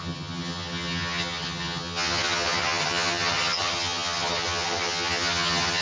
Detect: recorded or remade remade